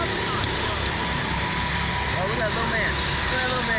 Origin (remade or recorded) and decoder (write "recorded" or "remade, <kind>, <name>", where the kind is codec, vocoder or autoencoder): recorded